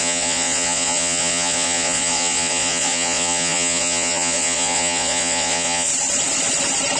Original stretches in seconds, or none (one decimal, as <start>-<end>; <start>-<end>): 5.9-7.0